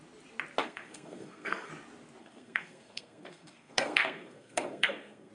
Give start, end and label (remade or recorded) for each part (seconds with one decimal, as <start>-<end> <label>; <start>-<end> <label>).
0.0-0.6 recorded; 0.6-1.7 remade; 1.7-2.2 recorded; 2.2-5.3 remade